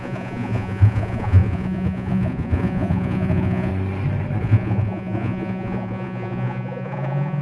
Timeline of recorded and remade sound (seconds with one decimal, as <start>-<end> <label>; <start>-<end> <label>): 0.0-3.7 remade; 3.7-4.4 recorded; 4.4-7.4 remade